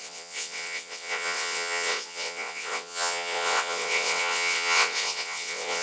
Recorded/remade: remade